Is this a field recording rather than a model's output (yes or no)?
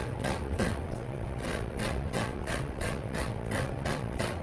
no